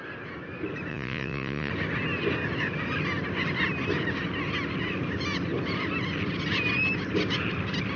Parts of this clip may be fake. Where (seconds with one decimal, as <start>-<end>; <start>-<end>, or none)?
0.9-1.7